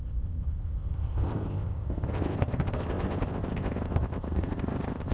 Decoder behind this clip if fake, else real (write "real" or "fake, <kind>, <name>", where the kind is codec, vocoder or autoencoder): fake, codec, ZipCodec